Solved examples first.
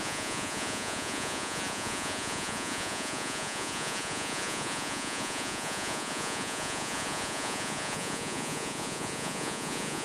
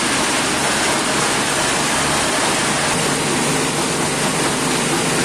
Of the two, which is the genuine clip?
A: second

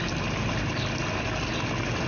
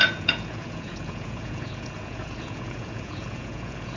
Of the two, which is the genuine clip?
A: first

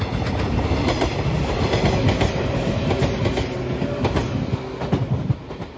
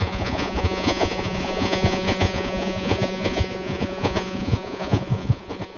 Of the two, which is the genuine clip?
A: first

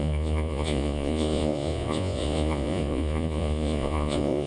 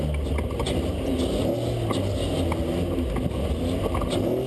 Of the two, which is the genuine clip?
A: second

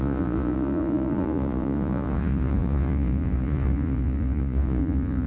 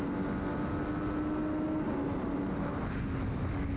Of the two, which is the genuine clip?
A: second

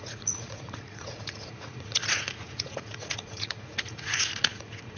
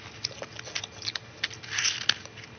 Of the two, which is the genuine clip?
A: second